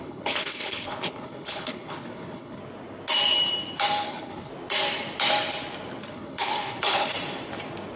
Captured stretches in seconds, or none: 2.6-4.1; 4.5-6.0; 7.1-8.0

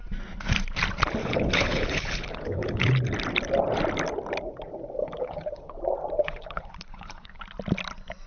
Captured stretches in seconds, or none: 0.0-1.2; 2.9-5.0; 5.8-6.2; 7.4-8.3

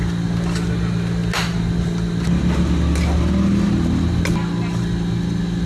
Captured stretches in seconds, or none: 0.0-5.7